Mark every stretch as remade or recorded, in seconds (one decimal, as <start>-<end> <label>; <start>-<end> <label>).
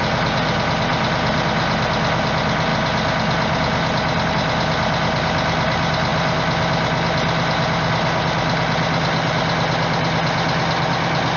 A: 0.0-11.4 recorded